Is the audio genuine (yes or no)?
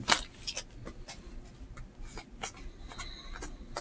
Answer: yes